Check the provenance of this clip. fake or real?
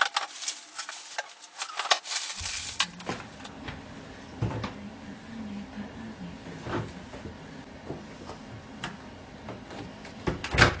real